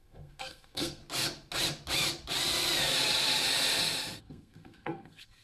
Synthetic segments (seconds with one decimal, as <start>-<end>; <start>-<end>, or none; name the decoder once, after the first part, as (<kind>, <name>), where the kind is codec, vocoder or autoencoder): 0.0-1.0 (codec, SNAC); 4.2-5.4